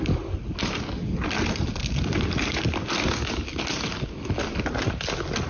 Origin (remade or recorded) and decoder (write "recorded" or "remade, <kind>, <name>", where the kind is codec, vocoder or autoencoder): recorded